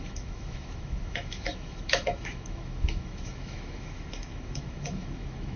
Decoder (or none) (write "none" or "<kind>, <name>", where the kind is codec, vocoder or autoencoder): autoencoder, DAC-VAE